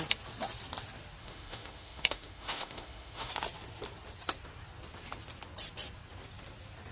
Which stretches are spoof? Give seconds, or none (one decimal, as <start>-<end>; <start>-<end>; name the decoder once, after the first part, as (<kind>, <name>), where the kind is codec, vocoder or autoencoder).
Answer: 1.2-3.3 (autoencoder, DAC-VAE)